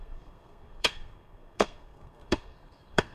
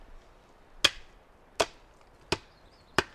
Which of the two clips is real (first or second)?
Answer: second